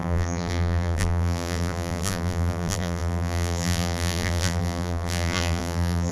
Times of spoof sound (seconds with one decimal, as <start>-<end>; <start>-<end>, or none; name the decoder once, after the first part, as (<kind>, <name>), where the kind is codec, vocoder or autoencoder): 0.0-6.1 (vocoder, BigVGAN v2)